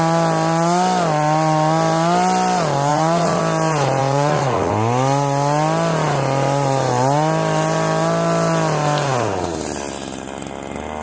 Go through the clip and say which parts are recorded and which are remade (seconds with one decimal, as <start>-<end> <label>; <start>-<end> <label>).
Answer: 0.0-2.9 recorded; 2.9-3.4 remade; 3.4-4.0 recorded; 4.0-4.7 remade; 4.7-11.0 recorded